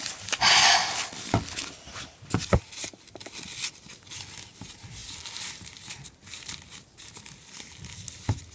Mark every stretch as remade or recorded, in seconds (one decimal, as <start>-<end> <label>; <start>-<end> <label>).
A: 0.0-8.5 recorded